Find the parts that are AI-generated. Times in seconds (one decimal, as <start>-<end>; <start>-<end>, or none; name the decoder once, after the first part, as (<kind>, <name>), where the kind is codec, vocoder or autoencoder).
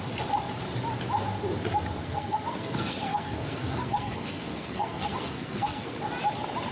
2.0-6.0 (codec, SNAC)